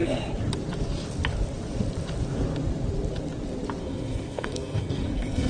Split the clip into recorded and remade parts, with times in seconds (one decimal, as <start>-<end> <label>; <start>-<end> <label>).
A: 0.0-3.8 recorded; 3.8-5.5 remade